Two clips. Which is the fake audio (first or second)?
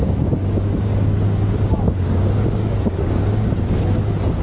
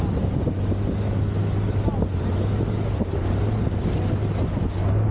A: first